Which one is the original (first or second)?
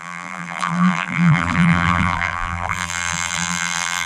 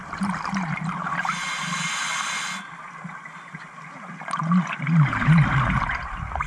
second